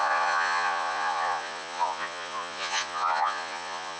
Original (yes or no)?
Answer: no